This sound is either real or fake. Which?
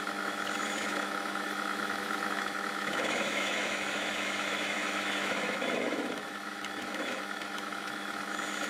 fake